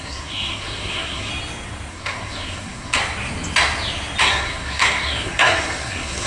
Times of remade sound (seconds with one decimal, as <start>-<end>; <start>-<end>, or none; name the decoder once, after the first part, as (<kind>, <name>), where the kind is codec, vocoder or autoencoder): 0.0-1.3 (codec, SNAC); 1.9-3.0; 4.2-6.3